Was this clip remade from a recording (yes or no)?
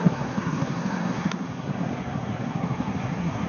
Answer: yes